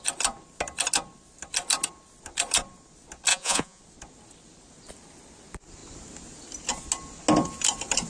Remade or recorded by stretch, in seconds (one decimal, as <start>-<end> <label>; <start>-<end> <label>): 0.0-3.3 recorded; 3.3-3.8 remade; 3.8-8.1 recorded